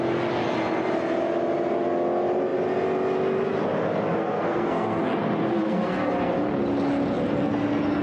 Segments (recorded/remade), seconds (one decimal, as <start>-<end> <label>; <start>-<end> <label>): 0.0-4.1 recorded; 4.1-5.0 remade; 5.0-5.5 recorded; 5.5-6.3 remade; 6.3-8.0 recorded